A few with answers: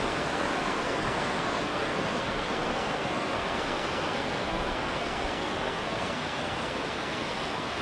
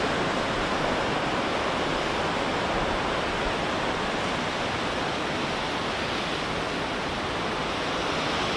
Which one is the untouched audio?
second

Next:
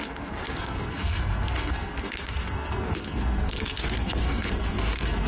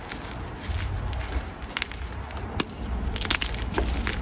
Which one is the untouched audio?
second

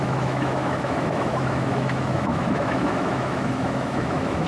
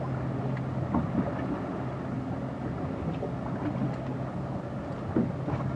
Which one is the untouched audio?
second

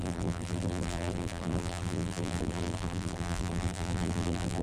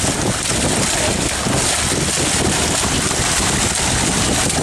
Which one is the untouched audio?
second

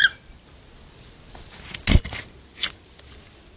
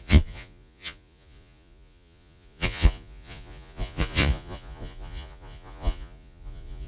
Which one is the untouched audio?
first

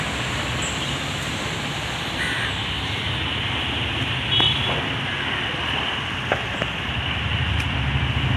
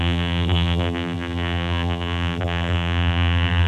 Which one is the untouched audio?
first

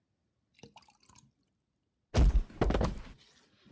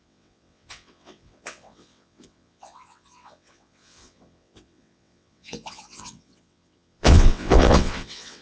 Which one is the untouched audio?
first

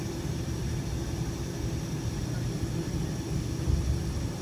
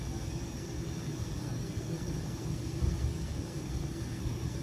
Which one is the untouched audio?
first